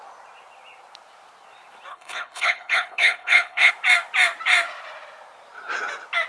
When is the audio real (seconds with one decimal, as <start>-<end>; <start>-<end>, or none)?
0.0-1.9; 3.7-6.3